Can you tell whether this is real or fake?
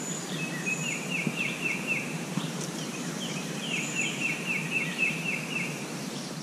fake